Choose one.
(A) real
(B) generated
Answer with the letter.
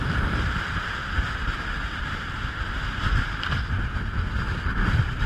A